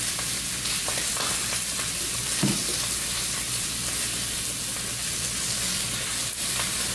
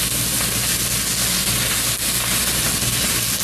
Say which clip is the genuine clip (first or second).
second